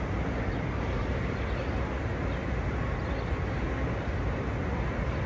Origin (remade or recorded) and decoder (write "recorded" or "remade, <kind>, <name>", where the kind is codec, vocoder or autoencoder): recorded